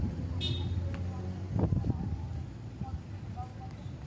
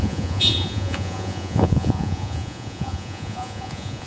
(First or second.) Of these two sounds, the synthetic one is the second